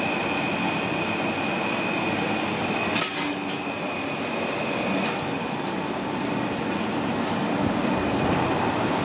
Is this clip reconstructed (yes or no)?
no